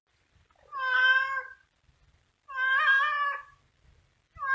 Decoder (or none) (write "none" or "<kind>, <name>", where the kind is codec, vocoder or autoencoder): none